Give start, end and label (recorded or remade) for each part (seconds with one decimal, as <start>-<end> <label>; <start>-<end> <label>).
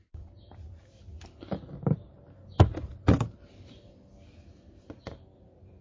0.0-5.8 recorded